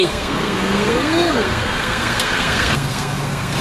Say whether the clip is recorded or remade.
remade